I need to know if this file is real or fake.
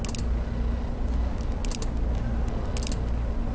real